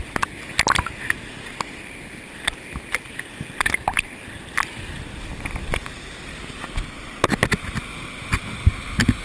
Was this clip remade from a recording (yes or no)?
no